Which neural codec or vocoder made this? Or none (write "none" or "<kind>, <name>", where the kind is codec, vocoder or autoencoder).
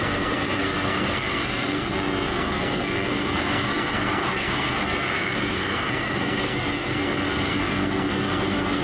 codec, SNAC